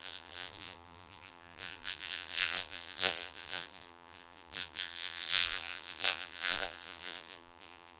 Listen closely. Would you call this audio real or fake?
fake